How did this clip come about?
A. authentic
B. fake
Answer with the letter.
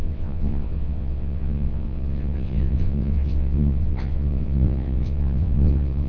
B